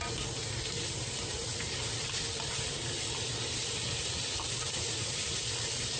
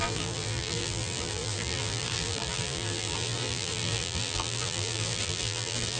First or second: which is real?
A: first